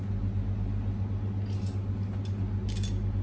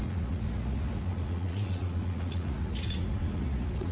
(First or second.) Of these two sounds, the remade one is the second